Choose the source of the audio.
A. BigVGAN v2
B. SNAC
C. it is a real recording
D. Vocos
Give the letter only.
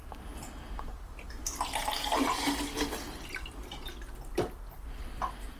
C